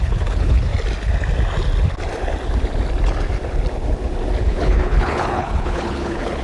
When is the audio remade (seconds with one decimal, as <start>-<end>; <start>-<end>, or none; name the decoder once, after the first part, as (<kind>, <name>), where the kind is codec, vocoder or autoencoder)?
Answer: 0.0-0.7 (codec, HILCodec); 4.4-6.4